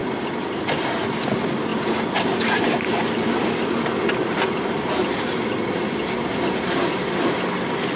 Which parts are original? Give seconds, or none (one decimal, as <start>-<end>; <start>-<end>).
0.0-8.0